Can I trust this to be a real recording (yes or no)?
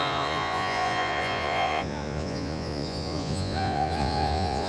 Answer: no